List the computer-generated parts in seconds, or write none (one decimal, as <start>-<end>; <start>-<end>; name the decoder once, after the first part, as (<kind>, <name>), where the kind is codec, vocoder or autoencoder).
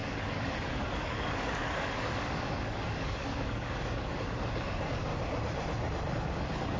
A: 0.0-5.1 (codec, DAC); 6.1-6.8